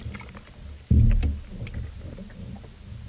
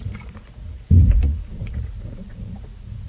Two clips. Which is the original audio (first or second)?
first